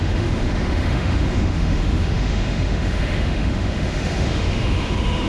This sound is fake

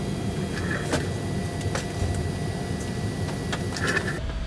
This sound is real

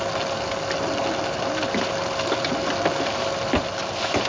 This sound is real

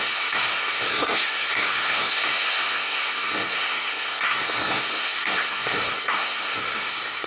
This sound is fake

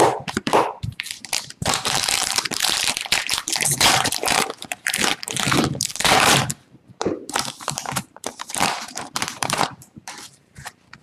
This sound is fake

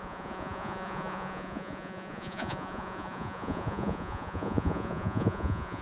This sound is fake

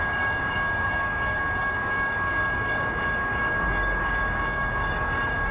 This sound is fake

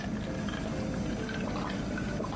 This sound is real